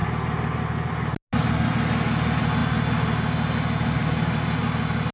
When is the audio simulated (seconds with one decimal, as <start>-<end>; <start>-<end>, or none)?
none